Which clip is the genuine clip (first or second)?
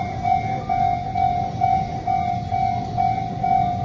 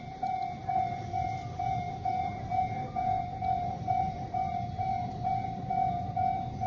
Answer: first